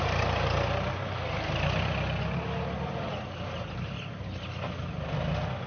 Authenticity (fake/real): real